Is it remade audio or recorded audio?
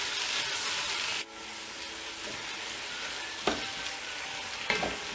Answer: recorded